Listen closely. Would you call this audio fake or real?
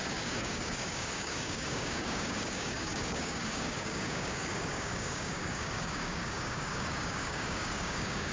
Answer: fake